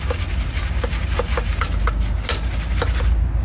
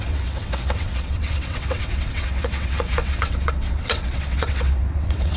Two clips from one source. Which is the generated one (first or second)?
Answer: second